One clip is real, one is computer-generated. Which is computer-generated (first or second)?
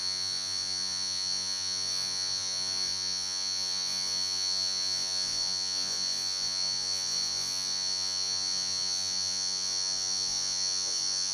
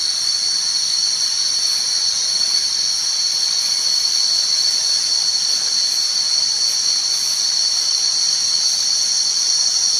first